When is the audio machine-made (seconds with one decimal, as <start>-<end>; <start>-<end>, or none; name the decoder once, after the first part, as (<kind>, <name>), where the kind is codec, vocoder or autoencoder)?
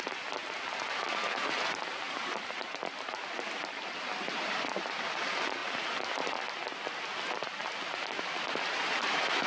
none